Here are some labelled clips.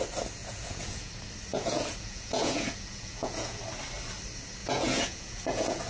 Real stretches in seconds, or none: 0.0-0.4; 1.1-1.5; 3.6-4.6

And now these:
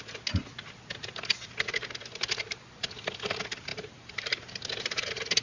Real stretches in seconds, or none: 0.0-3.7; 4.5-5.4

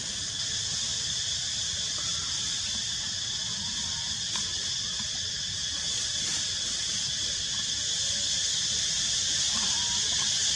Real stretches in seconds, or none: 0.0-10.6

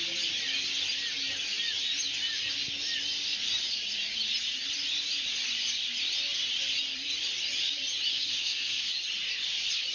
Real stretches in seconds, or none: 0.0-8.1; 8.9-9.9

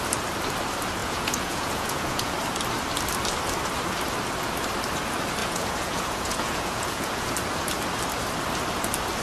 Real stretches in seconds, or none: 0.0-1.0; 2.3-5.4; 7.3-9.2

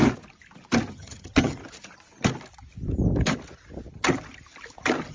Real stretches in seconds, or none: 0.0-0.9; 1.6-5.1

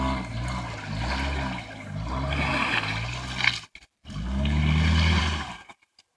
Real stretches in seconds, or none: 0.0-6.2

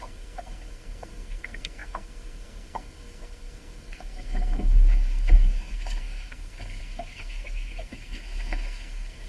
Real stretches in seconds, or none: none